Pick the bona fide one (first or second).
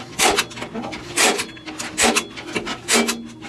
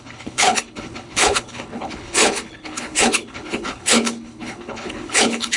first